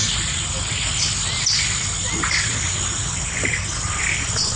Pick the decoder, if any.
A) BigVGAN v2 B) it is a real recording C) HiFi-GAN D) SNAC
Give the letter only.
B